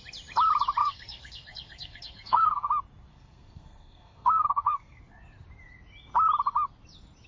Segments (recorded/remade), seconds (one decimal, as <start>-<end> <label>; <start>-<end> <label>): 0.0-0.8 recorded; 0.8-2.7 remade; 2.7-3.1 recorded; 3.1-5.0 remade; 5.0-7.3 recorded